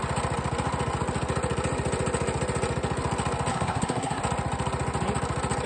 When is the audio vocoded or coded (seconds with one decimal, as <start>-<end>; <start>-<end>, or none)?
3.5-4.2